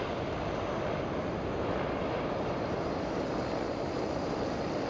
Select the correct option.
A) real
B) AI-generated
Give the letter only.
A